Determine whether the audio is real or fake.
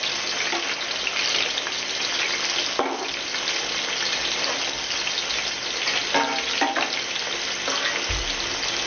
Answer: real